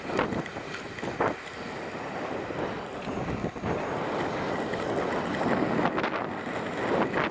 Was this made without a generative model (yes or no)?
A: yes